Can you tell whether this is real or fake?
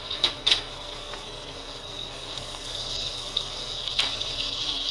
fake